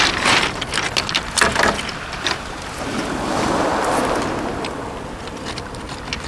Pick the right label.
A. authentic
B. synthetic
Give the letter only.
A